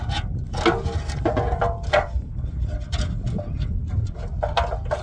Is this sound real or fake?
real